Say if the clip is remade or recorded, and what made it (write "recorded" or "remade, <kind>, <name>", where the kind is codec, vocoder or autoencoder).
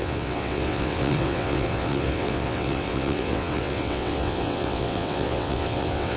remade, vocoder, WaveNeXt